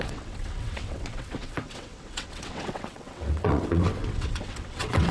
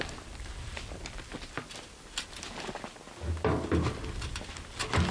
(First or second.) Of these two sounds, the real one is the second